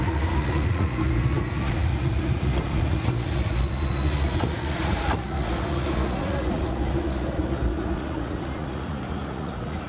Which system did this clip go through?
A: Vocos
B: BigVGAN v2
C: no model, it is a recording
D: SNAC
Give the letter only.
A